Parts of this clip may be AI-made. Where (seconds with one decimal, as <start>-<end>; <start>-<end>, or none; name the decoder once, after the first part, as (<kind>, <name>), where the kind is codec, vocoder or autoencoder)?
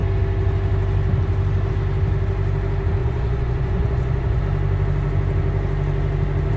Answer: 3.0-4.4 (vocoder, Vocos)